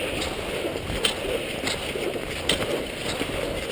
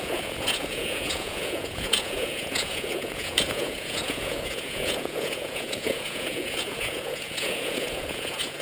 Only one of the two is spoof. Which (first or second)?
second